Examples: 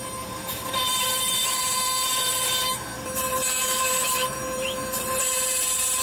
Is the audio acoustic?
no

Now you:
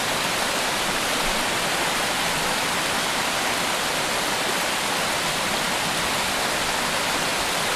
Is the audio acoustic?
yes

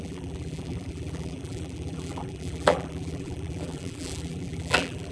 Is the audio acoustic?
no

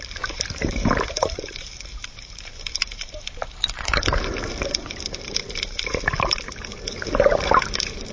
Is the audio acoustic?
no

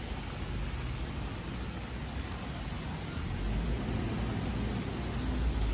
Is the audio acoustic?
yes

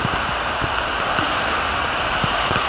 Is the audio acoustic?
yes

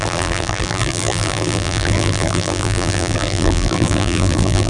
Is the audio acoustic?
no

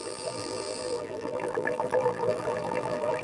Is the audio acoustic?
no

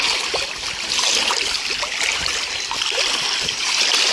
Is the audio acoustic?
yes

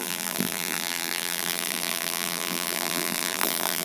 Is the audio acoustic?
no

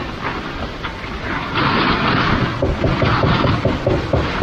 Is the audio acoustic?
yes